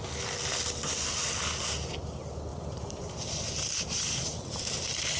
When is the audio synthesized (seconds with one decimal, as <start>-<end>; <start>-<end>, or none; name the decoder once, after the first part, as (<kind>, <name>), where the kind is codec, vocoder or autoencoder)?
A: 2.5-5.2 (vocoder, BigVGAN v2)